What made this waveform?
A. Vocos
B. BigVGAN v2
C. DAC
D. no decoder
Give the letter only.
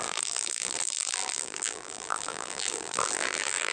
B